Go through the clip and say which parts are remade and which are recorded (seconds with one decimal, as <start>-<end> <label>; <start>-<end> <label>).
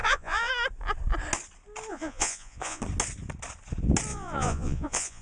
0.0-0.5 remade; 0.5-1.9 recorded; 1.9-2.8 remade; 2.8-4.1 recorded; 4.1-5.2 remade